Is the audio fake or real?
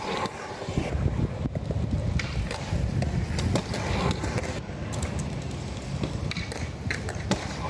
real